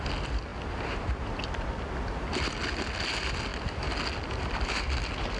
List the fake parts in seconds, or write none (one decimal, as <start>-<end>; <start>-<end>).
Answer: none